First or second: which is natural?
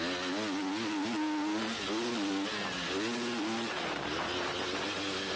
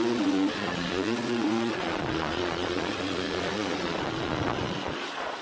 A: first